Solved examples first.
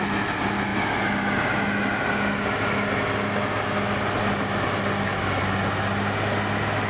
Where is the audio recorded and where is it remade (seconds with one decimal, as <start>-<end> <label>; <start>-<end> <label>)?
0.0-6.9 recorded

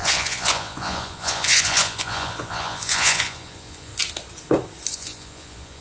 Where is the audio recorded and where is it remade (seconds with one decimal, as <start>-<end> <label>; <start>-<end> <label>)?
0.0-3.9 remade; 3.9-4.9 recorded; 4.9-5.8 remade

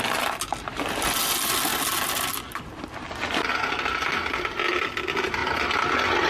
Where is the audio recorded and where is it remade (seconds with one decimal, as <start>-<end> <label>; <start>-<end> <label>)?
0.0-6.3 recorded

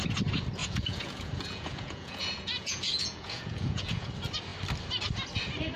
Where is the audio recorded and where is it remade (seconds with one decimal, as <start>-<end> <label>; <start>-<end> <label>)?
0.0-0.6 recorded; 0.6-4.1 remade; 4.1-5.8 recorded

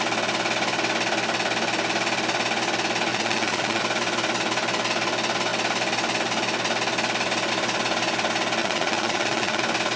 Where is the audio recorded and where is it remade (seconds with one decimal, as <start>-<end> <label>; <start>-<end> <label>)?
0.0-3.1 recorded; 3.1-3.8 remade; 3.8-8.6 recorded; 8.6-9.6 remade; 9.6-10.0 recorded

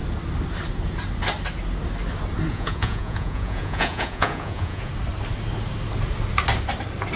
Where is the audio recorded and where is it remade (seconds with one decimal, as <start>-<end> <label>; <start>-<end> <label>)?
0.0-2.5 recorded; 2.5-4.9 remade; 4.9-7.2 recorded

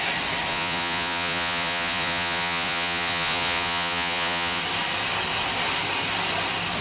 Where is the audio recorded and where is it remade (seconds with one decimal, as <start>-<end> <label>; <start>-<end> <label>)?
0.0-0.5 recorded; 0.5-4.6 remade; 4.6-6.8 recorded

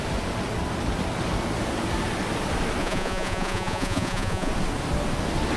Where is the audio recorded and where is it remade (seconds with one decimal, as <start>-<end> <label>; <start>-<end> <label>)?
0.0-2.8 recorded; 2.8-4.5 remade; 4.5-5.6 recorded